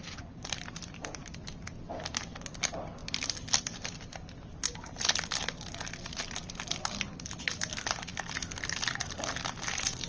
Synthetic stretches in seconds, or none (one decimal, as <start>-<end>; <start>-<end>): 3.0-4.5